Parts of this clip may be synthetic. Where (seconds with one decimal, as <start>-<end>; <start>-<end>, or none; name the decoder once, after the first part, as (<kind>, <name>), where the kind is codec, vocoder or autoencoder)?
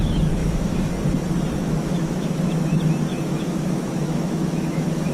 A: 0.4-0.9 (autoencoder, DAC-VAE); 1.6-2.5; 3.1-5.1